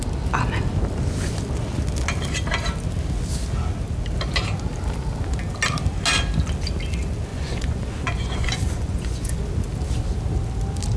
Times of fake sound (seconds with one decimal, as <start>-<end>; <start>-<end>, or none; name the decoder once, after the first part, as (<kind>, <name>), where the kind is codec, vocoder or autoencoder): 7.3-9.5 (vocoder, Vocos)